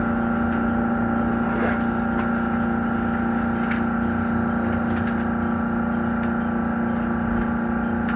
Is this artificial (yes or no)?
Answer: no